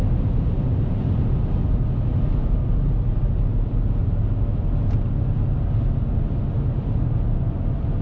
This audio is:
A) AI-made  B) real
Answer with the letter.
B